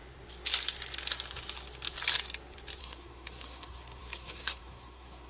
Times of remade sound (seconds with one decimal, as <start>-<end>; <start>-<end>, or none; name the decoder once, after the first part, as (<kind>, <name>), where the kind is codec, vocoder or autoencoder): 2.8-5.3 (codec, SNAC)